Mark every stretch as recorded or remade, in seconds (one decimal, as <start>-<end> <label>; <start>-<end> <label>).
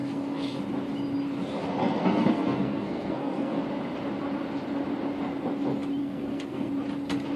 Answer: 0.0-0.6 remade; 0.6-1.8 recorded; 1.8-3.6 remade; 3.6-6.0 recorded; 6.0-6.7 remade; 6.7-7.4 recorded